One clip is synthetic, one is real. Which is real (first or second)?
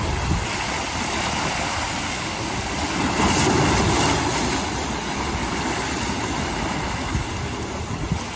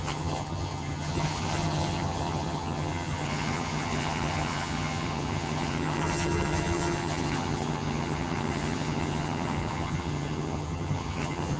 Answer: first